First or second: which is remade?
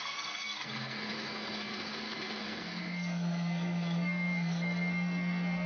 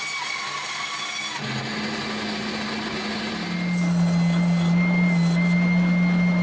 first